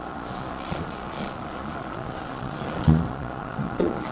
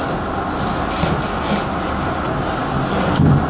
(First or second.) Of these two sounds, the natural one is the second